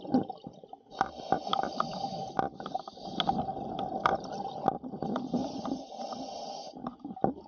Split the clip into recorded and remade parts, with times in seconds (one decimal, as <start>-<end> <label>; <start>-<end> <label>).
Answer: 0.0-7.5 recorded